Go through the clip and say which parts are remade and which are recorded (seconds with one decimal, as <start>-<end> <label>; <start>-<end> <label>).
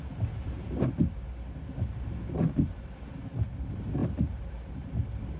0.0-4.0 recorded; 4.0-4.9 remade; 4.9-5.4 recorded